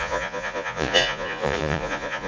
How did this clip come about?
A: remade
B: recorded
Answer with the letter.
A